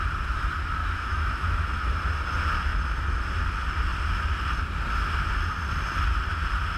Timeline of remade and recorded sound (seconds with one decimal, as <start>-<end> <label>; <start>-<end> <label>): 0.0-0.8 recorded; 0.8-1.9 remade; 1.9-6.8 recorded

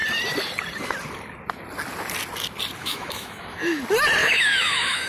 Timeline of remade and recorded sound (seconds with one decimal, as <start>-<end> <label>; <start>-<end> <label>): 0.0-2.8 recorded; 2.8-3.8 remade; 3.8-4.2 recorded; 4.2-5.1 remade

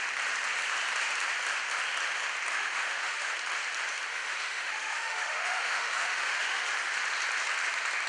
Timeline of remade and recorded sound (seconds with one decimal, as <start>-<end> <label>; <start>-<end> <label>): 0.0-2.5 recorded; 2.5-3.3 remade; 3.3-4.1 recorded; 4.1-6.7 remade; 6.7-8.1 recorded

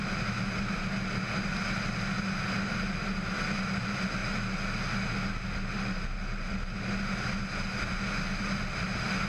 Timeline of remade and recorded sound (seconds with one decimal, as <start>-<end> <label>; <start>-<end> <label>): 0.0-9.3 recorded

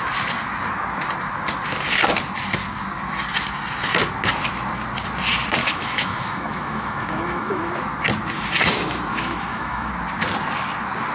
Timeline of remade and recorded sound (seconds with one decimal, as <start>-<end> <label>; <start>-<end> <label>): 0.0-5.6 recorded; 5.6-7.7 remade; 7.7-9.1 recorded; 9.1-9.9 remade; 9.9-11.1 recorded

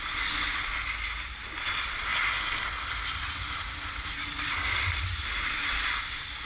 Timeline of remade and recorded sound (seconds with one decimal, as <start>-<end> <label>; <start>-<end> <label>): 0.0-6.5 recorded

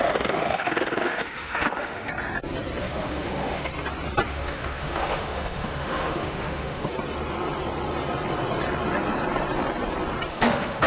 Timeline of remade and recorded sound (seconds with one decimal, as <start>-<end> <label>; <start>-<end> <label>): 0.0-2.1 remade; 2.1-2.8 recorded; 2.8-3.7 remade; 3.7-4.3 recorded; 4.3-6.9 remade; 6.9-10.3 recorded; 10.3-10.9 remade

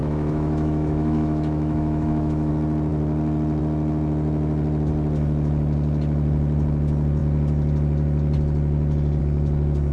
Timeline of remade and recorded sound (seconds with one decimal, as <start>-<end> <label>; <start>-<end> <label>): 0.0-2.5 remade; 2.5-9.9 recorded